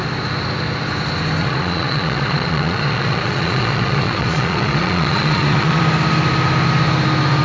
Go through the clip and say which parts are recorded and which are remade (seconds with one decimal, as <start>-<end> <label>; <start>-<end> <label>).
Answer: 0.0-1.4 recorded; 1.4-5.8 remade; 5.8-7.4 recorded